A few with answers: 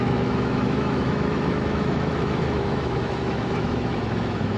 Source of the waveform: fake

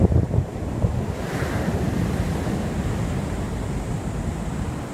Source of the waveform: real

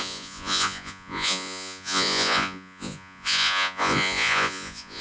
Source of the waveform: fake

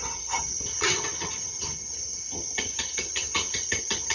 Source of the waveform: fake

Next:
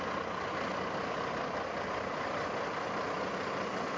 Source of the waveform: real